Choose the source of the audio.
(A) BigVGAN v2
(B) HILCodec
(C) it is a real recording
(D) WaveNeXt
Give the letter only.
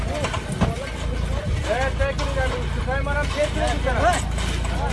C